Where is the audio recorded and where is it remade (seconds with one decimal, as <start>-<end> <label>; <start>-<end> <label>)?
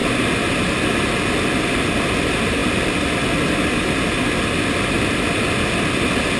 0.0-6.4 recorded